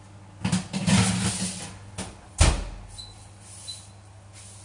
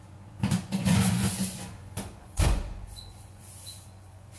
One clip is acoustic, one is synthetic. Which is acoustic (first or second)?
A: first